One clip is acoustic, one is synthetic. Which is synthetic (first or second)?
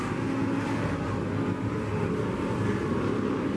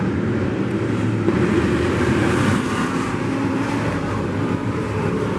second